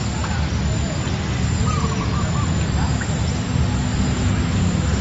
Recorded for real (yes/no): yes